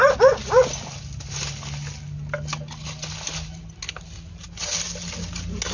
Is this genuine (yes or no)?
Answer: yes